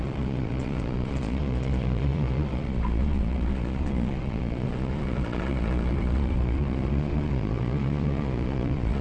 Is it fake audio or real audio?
fake